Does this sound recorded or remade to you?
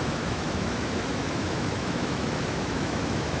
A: remade